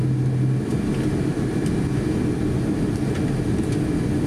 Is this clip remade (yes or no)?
no